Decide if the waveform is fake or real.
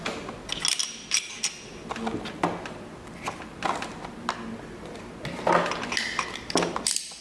real